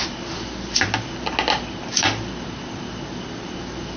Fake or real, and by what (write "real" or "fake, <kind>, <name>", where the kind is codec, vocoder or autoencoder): real